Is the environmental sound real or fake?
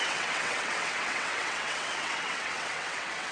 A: fake